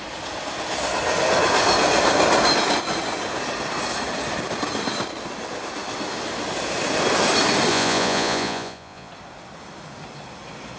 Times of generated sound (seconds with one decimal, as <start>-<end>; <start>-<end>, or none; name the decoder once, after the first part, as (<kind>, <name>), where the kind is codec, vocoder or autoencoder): 7.7-9.1 (vocoder, Vocos)